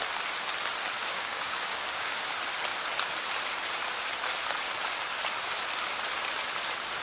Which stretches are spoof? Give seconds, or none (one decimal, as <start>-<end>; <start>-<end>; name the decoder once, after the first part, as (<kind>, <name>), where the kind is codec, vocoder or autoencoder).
1.0-2.2 (codec, DAC)